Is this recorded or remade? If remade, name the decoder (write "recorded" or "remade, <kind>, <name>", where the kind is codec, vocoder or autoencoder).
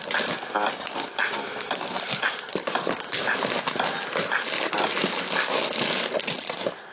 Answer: recorded